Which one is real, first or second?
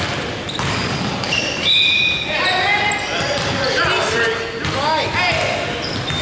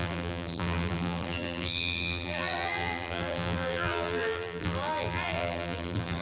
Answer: first